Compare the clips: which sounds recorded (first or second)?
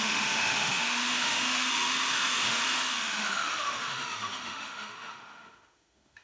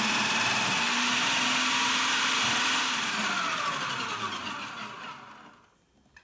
second